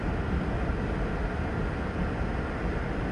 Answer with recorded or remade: recorded